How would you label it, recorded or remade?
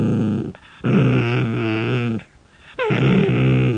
recorded